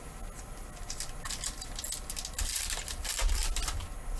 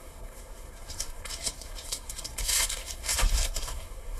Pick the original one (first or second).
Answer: first